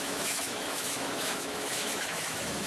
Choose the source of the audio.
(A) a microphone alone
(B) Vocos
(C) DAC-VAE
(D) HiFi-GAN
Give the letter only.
C